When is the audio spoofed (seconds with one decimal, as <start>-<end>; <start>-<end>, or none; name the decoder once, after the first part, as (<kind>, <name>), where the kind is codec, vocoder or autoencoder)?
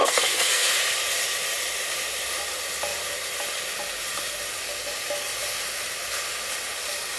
0.0-0.7 (codec, SNAC)